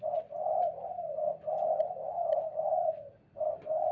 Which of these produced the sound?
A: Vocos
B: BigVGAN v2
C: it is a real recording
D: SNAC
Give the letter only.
B